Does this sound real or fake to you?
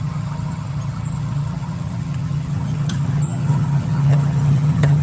fake